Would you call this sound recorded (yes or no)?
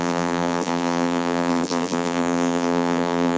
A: no